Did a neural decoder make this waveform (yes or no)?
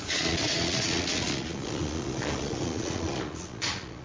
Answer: yes